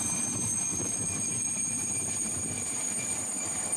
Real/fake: fake